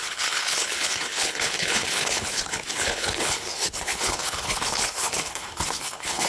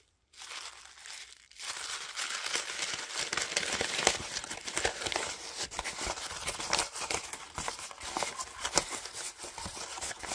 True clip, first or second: second